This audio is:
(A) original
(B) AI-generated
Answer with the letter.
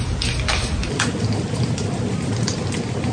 A